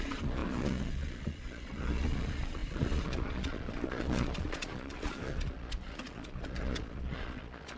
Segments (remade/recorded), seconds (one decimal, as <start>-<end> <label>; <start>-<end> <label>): 0.0-7.8 remade